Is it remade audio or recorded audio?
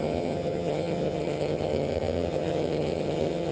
remade